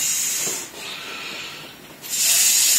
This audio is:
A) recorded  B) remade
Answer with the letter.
A